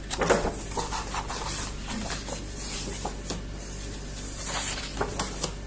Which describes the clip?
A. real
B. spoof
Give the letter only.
A